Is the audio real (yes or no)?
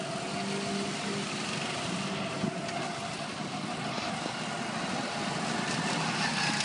yes